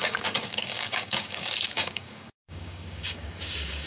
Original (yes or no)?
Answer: no